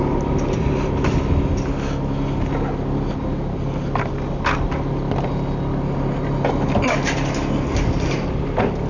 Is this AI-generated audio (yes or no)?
no